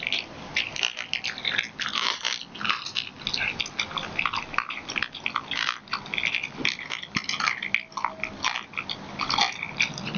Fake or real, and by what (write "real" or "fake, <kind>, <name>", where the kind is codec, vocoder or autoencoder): real